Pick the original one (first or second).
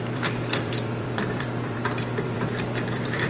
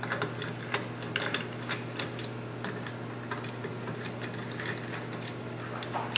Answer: second